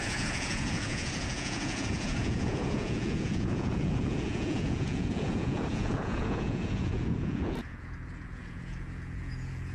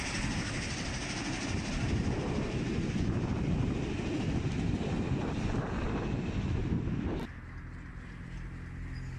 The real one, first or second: second